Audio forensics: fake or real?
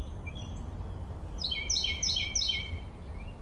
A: real